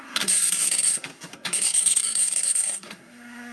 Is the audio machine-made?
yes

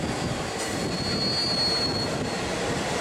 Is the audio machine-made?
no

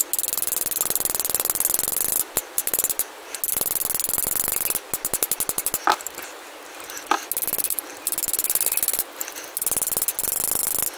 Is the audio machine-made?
no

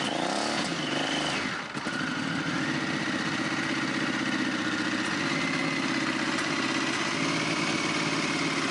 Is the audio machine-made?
no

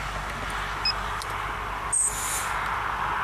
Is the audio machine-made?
no